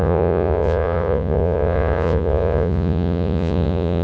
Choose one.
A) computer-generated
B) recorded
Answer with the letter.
A